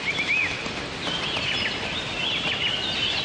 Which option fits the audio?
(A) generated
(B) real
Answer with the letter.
B